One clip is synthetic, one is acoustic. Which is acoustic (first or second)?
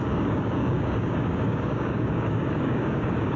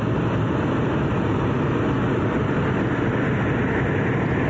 second